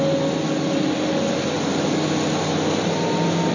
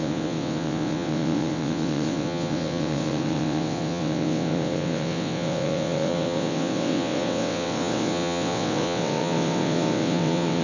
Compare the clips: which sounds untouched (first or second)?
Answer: first